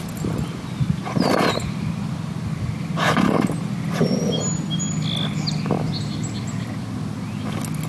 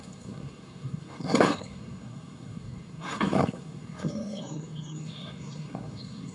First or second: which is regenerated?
second